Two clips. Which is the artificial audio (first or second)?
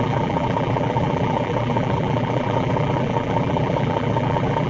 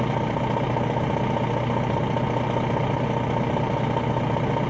first